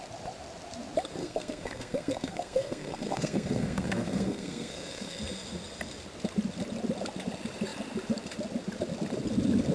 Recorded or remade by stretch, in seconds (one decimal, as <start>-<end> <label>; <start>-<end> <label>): 0.0-1.2 recorded; 1.2-5.2 remade; 5.2-9.7 recorded